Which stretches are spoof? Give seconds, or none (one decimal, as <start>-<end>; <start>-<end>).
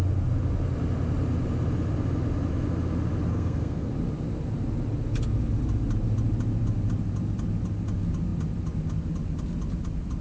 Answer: 3.3-3.9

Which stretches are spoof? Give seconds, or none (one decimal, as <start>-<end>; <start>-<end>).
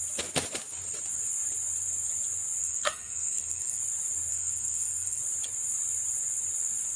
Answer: 2.6-3.8; 4.3-5.2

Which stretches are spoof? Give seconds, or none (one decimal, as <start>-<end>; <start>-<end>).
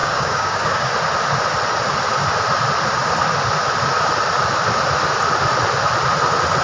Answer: 0.0-0.9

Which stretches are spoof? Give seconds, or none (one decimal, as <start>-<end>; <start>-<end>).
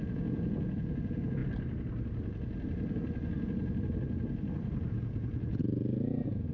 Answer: 0.0-1.4; 4.9-6.5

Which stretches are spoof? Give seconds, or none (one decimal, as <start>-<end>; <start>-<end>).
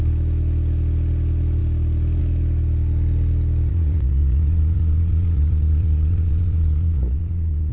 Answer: 3.7-7.7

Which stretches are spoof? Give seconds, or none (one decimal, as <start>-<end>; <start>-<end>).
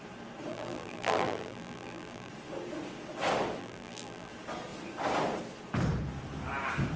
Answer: 0.5-2.3; 3.6-4.3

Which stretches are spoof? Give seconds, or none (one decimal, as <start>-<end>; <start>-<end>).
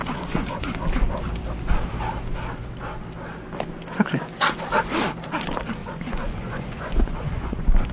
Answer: 0.0-0.8; 5.8-7.9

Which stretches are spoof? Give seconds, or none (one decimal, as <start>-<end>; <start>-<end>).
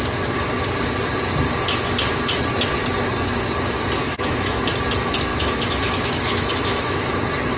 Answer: 4.0-4.6; 5.3-7.1